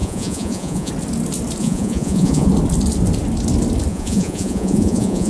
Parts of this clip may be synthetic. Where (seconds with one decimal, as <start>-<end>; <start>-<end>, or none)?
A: 0.0-0.9; 1.6-2.5; 3.9-5.3